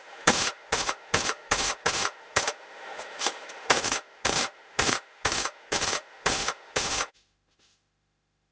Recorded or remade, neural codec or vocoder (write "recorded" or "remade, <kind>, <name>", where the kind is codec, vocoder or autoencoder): remade, autoencoder, DAC-VAE